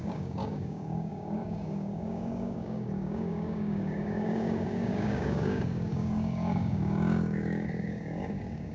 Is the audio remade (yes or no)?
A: yes